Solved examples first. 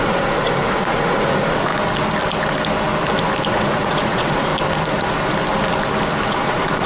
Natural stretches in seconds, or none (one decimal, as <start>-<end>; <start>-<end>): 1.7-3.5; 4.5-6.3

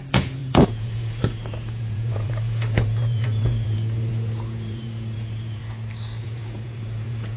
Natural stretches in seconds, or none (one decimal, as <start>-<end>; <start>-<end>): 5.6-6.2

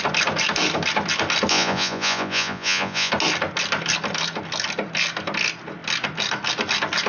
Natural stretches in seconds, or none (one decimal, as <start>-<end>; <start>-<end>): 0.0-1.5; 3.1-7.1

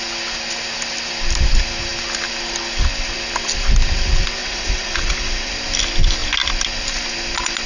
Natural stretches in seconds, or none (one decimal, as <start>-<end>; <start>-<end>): 0.0-4.4; 5.5-7.7